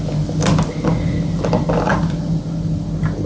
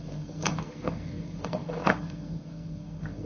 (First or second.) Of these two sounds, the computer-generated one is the second